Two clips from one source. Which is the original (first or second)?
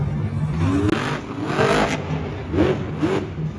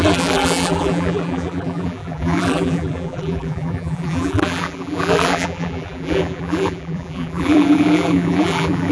first